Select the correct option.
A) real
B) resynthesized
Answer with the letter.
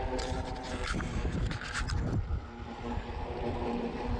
A